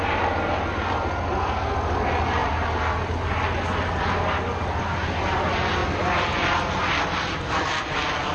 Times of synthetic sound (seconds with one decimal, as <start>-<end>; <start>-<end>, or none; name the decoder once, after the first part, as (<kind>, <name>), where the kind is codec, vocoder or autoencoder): none